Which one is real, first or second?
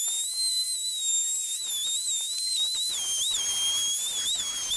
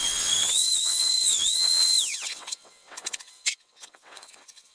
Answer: first